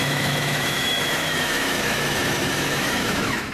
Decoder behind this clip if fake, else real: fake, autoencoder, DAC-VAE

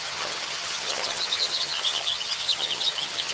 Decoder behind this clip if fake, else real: fake, vocoder, HiFi-GAN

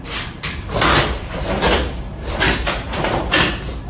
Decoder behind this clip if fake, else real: fake, vocoder, BigVGAN v2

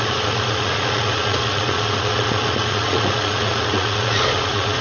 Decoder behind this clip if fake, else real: fake, vocoder, Vocos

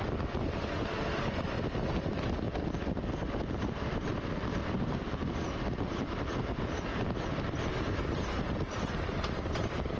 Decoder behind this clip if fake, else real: fake, vocoder, BigVGAN v2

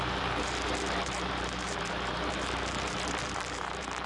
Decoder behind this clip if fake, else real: fake, vocoder, BigVGAN v2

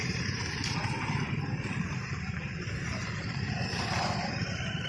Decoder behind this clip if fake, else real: fake, vocoder, BigVGAN v2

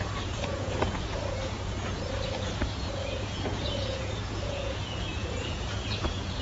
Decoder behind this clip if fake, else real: fake, vocoder, Vocos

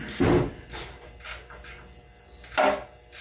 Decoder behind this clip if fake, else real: real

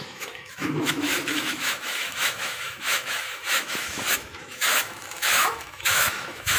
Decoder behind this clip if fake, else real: fake, autoencoder, DAC-VAE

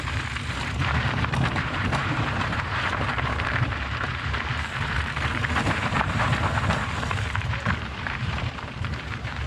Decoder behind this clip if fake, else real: fake, vocoder, BigVGAN v2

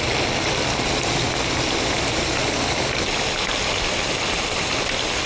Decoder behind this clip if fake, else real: real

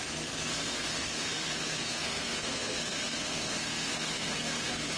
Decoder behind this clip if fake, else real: fake, codec, SNAC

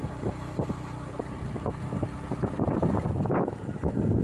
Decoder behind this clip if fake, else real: real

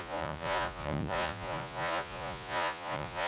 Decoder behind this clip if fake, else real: fake, vocoder, Vocos